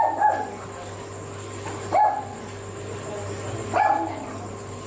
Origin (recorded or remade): recorded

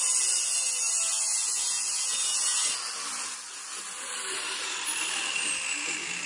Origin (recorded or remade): recorded